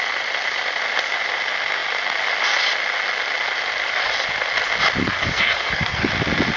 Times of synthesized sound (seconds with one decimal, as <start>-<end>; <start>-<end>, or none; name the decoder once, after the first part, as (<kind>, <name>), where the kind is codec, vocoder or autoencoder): 5.0-6.1 (codec, SNAC)